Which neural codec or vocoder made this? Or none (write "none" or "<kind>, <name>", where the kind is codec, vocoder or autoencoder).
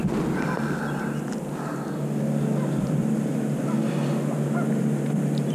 none